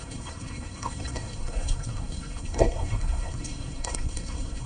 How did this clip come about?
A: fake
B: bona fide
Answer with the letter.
A